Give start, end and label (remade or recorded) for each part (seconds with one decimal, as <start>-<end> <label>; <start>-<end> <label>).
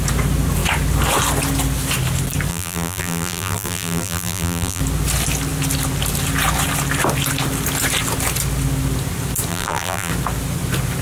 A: 0.0-2.5 recorded; 2.5-4.8 remade; 4.8-9.5 recorded; 9.5-10.1 remade; 10.1-11.0 recorded